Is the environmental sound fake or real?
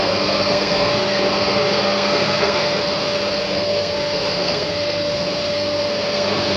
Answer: fake